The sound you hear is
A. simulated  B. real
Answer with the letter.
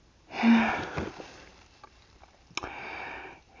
B